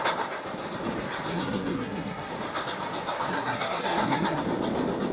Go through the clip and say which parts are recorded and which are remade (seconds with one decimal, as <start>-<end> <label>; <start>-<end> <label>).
0.0-1.3 recorded; 1.3-2.3 remade; 2.3-3.3 recorded; 3.3-4.4 remade; 4.4-5.1 recorded